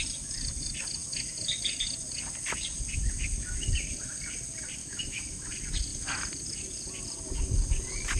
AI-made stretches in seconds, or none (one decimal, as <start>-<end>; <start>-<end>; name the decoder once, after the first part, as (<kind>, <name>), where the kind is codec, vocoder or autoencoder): 4.8-5.5 (autoencoder, DAC-VAE)